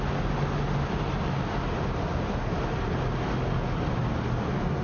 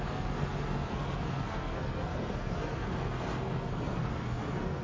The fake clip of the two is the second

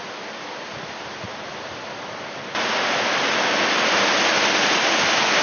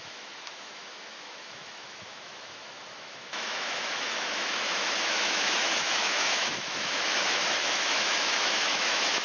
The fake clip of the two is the second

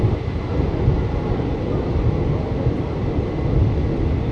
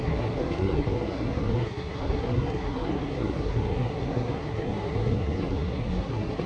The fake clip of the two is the second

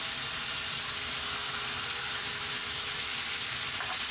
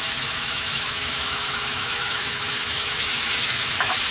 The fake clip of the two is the second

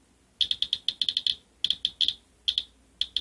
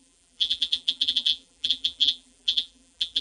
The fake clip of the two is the second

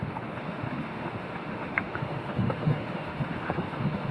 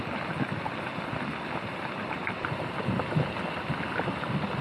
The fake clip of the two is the first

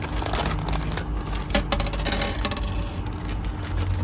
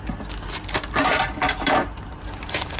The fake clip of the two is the second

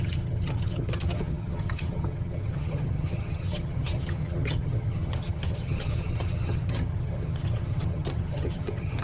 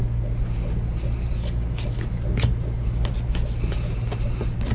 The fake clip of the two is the first